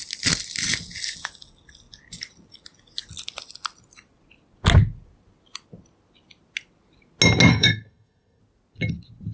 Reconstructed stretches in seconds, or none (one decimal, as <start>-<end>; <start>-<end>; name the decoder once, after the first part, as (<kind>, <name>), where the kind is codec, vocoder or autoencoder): 7.5-8.4 (codec, SNAC)